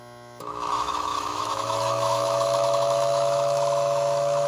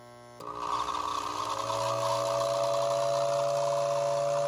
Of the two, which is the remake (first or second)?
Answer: first